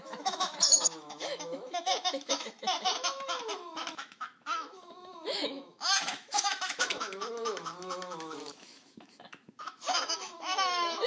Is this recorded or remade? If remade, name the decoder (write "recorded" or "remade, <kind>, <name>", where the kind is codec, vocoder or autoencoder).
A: remade, autoencoder, DAC-VAE